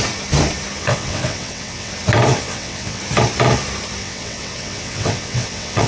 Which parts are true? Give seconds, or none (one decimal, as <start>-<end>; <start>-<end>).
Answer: 0.0-0.8; 1.9-2.3; 3.0-4.0